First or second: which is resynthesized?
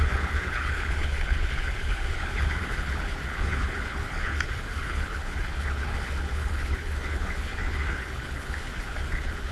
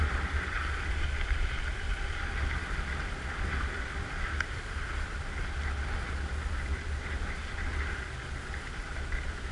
first